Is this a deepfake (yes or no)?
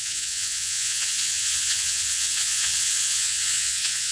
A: yes